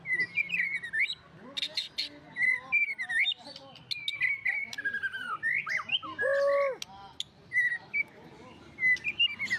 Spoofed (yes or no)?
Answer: no